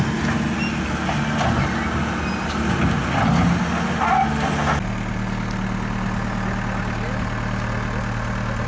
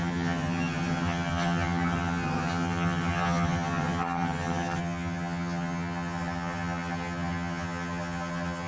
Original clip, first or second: first